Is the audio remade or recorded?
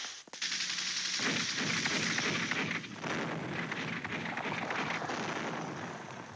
recorded